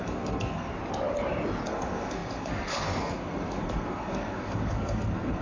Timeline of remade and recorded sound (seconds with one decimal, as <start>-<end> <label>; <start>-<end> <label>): 0.0-0.7 remade; 0.7-1.7 recorded; 1.7-5.4 remade